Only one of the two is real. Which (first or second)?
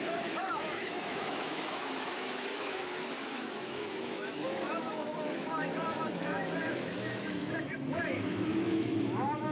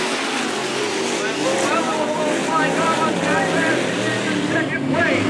second